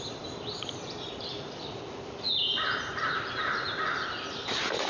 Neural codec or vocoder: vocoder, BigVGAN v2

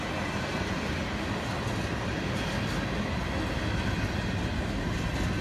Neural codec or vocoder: none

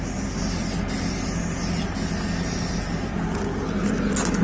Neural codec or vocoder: none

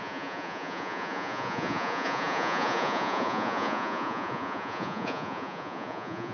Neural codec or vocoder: vocoder, Vocos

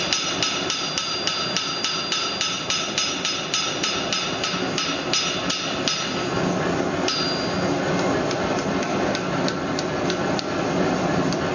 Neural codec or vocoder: none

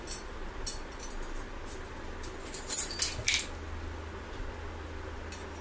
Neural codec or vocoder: none